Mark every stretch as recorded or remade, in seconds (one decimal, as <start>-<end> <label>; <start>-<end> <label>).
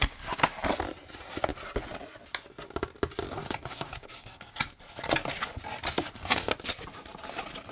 0.0-0.5 remade; 0.5-3.4 recorded; 3.4-4.3 remade; 4.3-7.7 recorded